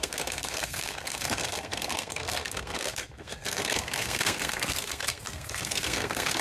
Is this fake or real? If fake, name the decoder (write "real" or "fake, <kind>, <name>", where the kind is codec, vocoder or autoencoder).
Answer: fake, codec, SNAC